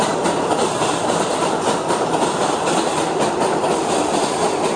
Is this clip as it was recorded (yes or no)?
yes